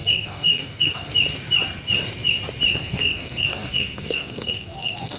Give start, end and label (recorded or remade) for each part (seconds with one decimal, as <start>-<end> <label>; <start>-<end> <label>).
0.0-1.1 remade; 1.1-2.7 recorded; 2.7-5.2 remade